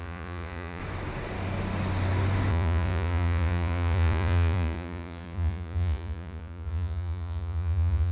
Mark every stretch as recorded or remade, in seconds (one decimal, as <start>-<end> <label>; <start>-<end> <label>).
0.0-0.8 remade; 0.8-2.5 recorded; 2.5-8.1 remade